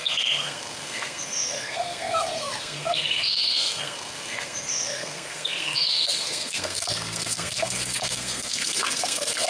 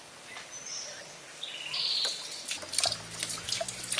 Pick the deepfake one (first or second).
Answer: first